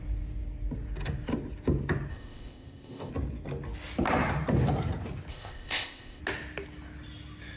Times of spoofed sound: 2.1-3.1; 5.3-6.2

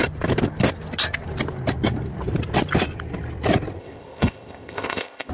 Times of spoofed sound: 3.8-5.3

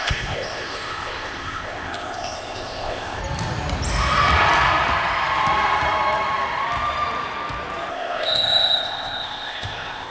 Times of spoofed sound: 0.0-3.2; 7.9-10.1

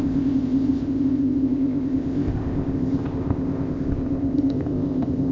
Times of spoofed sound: 0.0-5.3